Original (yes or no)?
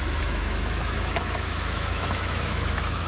no